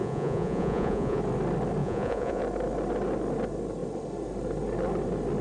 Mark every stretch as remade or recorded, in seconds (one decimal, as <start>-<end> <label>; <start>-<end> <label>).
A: 0.0-1.2 remade; 1.2-1.8 recorded; 1.8-2.4 remade; 2.4-5.4 recorded